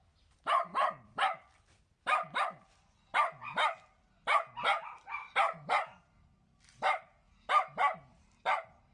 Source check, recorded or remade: recorded